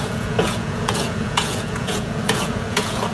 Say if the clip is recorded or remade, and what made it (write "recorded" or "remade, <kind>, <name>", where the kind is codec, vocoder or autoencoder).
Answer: remade, vocoder, Vocos